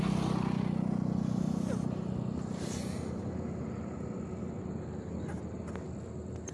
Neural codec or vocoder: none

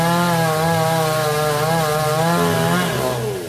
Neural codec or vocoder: none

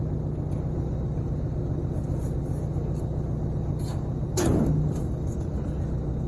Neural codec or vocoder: none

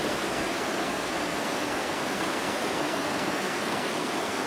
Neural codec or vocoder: codec, SNAC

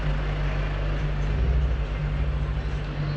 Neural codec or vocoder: none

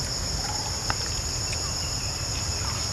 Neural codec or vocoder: none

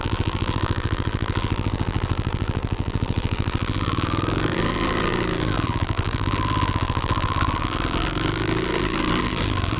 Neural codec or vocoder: vocoder, BigVGAN v2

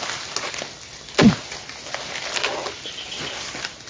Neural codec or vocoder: none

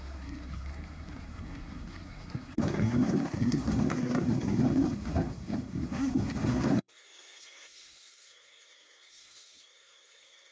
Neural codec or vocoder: codec, SNAC